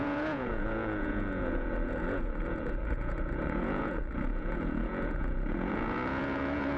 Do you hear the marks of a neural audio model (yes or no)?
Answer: yes